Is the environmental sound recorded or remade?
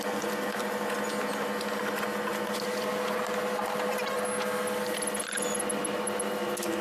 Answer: recorded